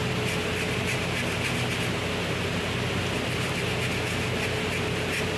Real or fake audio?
real